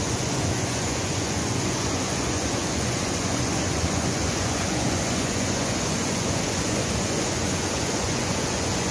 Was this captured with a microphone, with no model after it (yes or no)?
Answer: no